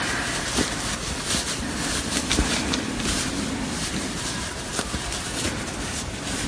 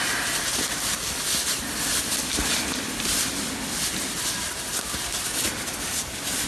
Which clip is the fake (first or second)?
first